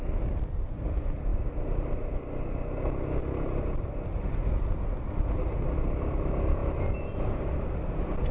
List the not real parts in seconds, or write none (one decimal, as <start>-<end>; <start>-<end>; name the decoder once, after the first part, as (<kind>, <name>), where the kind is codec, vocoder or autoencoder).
6.6-7.5 (vocoder, BigVGAN v2)